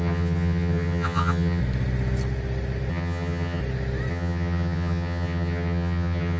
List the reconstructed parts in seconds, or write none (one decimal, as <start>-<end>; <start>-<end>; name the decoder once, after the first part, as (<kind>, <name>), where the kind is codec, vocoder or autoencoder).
0.0-1.6 (vocoder, HiFi-GAN); 2.9-3.6; 4.1-6.4